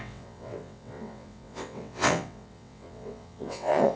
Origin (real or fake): fake